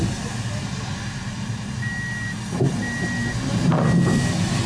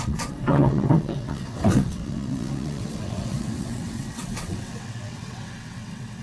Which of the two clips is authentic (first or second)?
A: first